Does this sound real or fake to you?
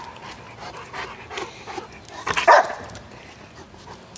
real